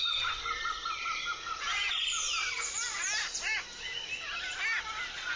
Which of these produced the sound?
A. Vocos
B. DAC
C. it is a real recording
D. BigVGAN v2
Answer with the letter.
C